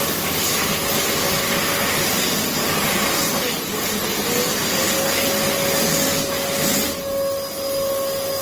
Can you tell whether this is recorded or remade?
recorded